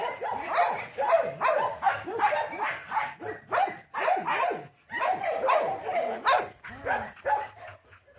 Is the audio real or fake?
real